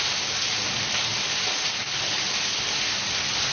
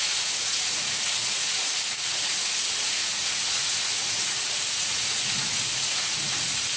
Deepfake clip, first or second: second